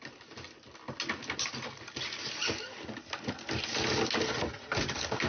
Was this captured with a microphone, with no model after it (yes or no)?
yes